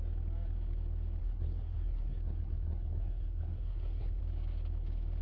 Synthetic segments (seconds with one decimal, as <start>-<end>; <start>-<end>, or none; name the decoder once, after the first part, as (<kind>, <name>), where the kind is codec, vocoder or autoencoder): 1.2-4.2 (codec, SNAC)